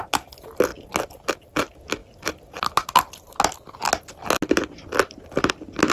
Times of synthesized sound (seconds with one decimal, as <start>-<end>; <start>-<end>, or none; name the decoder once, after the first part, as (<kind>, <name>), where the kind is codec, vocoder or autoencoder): none